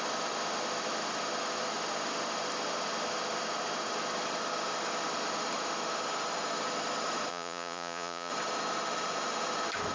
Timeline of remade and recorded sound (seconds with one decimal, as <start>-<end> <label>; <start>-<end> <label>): 0.0-7.3 recorded; 7.3-8.3 remade; 8.3-9.9 recorded